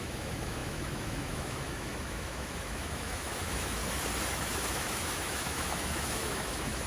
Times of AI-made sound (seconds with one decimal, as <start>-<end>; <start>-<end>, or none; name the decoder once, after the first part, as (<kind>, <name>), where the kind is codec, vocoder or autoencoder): 0.0-3.8 (autoencoder, DAC-VAE); 4.3-6.9